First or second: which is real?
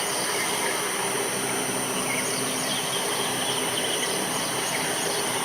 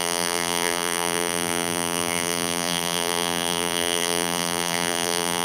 first